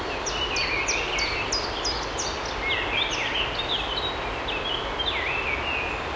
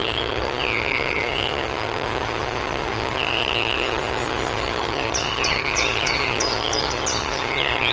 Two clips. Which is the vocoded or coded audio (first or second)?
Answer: second